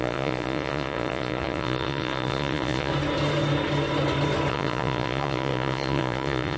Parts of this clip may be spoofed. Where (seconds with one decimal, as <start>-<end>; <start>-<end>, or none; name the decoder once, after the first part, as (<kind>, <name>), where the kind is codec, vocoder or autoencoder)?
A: 0.0-2.9 (vocoder, Vocos); 4.5-6.6